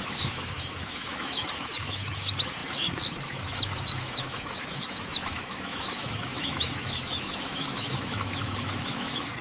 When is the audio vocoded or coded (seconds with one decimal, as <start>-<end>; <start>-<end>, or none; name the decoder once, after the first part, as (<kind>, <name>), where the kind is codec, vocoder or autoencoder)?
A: 0.0-9.4 (autoencoder, DAC-VAE)